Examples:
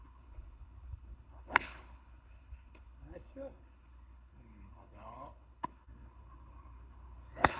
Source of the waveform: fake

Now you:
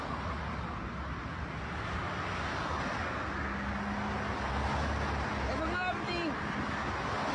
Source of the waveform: real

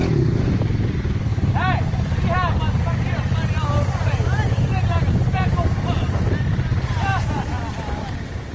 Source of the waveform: real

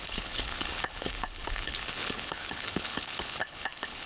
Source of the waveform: fake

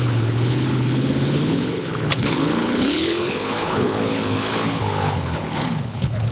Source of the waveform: fake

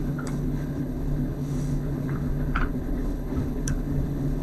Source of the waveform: fake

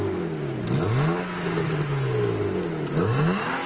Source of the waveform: real